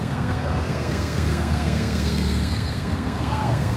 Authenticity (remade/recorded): remade